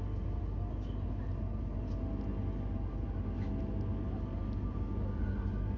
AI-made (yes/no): no